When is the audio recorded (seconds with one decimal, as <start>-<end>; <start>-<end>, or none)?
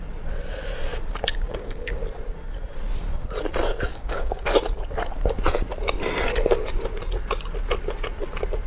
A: 0.0-1.3; 1.9-3.9; 4.5-8.7